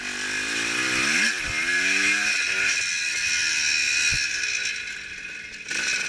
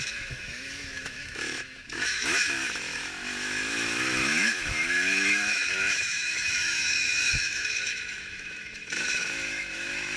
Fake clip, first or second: second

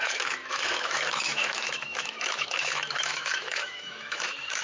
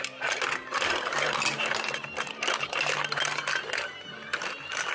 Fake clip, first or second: first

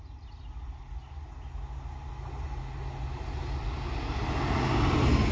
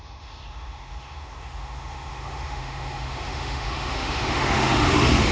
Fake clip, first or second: second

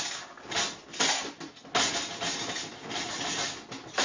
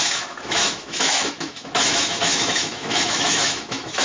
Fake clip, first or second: second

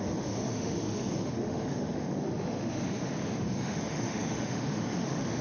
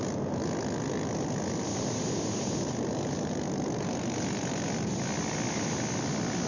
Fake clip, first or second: first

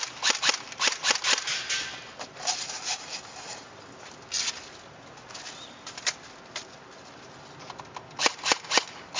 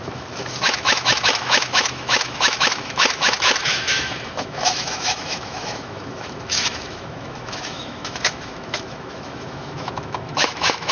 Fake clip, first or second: second